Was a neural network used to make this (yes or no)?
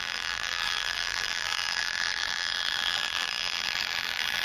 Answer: yes